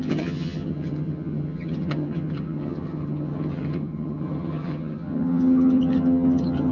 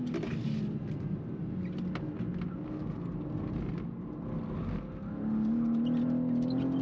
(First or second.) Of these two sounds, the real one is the second